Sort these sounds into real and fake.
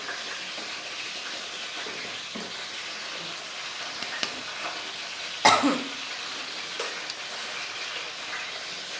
real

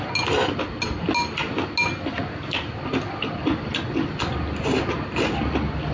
real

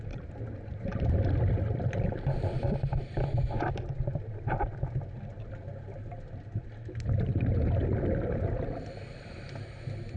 real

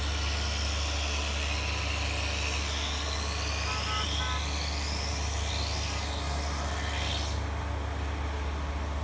real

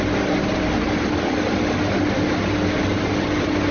real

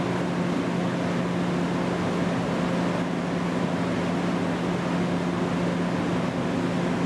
real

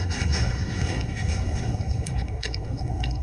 fake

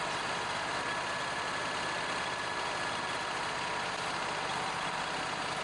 real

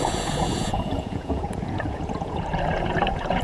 fake